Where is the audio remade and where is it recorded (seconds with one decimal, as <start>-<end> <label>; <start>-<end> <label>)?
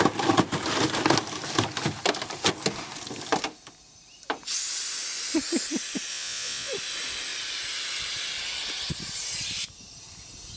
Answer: 0.0-6.1 recorded; 6.1-6.7 remade; 6.7-10.6 recorded